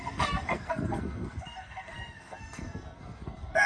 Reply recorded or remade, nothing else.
remade